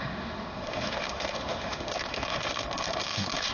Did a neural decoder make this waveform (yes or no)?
yes